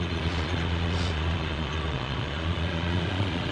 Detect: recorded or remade remade